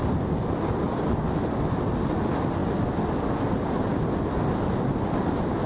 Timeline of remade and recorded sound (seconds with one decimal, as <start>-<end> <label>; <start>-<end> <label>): 0.0-5.7 recorded